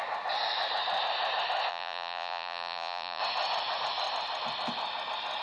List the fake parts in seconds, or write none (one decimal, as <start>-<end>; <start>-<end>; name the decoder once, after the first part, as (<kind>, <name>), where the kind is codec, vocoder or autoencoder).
1.7-3.2 (vocoder, Vocos)